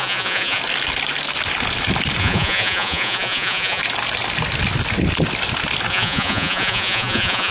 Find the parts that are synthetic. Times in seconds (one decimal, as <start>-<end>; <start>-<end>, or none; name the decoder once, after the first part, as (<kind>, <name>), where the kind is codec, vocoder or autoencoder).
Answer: 0.0-0.6 (vocoder, Vocos); 2.2-3.8; 5.9-7.5